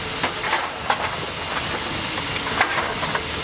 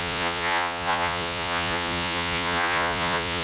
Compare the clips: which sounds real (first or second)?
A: first